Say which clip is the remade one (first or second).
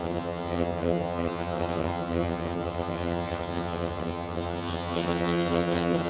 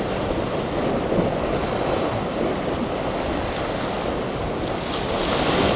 first